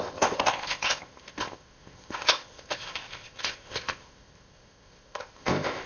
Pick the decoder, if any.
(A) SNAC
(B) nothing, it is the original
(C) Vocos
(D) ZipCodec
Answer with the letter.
D